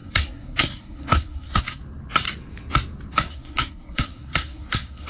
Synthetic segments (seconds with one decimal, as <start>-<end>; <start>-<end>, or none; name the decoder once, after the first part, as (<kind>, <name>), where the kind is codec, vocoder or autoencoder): 0.0-1.8 (codec, SNAC); 3.3-5.1